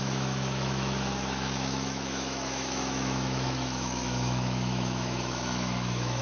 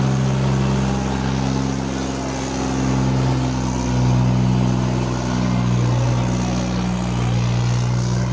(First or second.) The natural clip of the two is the second